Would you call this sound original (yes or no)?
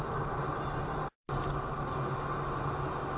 yes